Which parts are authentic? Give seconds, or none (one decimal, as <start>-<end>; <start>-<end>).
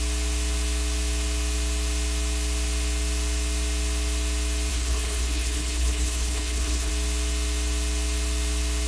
0.0-4.7; 6.9-8.9